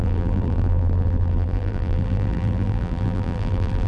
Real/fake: fake